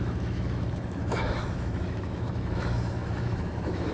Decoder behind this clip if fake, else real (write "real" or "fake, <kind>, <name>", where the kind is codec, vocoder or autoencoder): fake, autoencoder, DAC-VAE